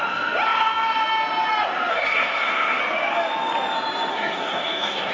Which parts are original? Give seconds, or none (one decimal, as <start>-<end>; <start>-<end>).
0.0-1.9; 2.8-4.1